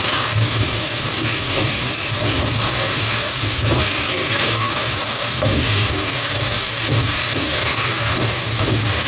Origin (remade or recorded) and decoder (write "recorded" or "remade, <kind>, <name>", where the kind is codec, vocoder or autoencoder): remade, codec, DAC